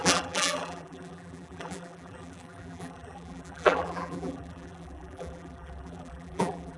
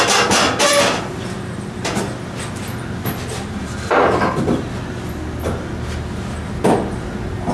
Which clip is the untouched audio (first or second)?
second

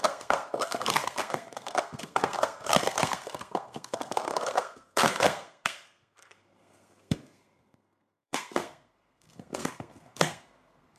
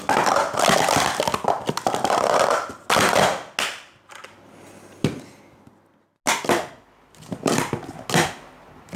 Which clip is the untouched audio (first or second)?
second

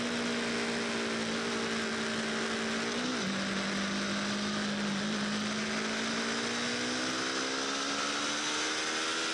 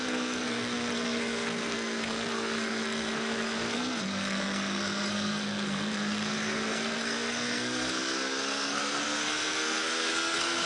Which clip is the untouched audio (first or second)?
first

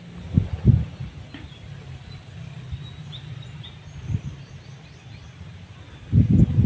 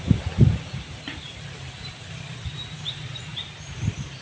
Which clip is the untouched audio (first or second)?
first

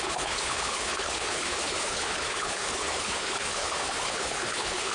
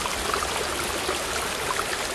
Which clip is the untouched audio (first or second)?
second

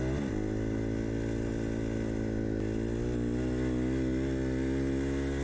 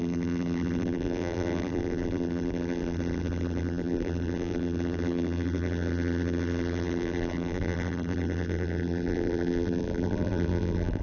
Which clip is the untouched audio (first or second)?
first